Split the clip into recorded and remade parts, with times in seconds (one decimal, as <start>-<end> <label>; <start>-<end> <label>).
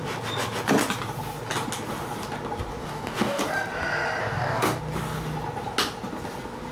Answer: 0.0-2.8 recorded; 2.8-3.4 remade; 3.4-4.2 recorded; 4.2-4.8 remade; 4.8-6.7 recorded